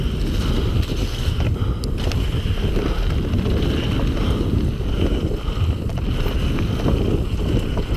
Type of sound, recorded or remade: recorded